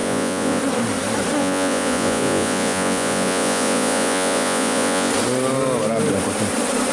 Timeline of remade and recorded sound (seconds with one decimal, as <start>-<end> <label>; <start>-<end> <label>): 0.0-0.6 remade; 0.6-1.4 recorded; 1.4-5.1 remade; 5.1-6.9 recorded